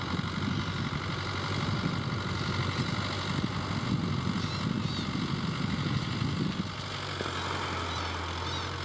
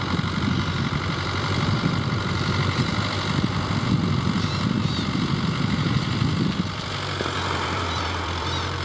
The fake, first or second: second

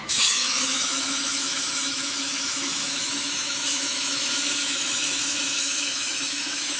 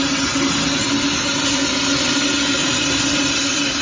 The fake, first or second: first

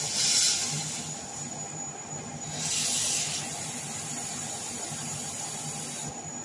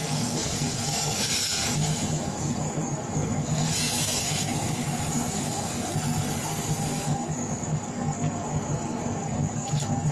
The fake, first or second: second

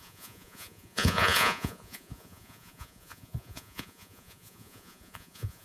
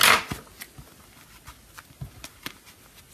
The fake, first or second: first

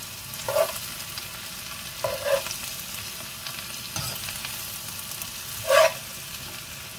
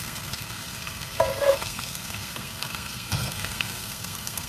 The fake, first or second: second